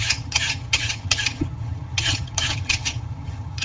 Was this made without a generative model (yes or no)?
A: no